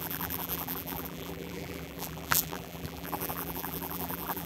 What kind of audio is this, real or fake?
fake